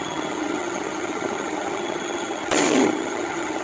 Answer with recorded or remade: remade